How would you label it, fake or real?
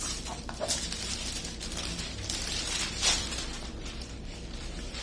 fake